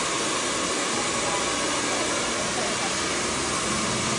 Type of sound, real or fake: real